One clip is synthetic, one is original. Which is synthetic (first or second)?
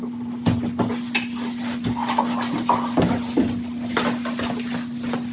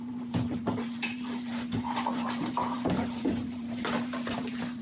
second